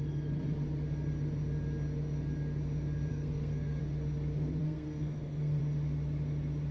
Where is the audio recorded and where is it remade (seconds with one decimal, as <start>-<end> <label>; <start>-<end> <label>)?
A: 0.0-3.1 recorded; 3.1-3.8 remade; 3.8-4.6 recorded; 4.6-5.6 remade; 5.6-6.7 recorded